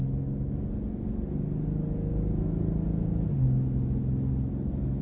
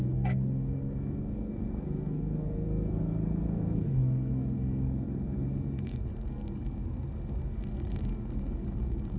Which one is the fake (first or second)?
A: second